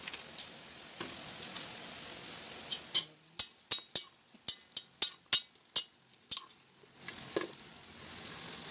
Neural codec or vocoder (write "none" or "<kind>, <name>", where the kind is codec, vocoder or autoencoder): none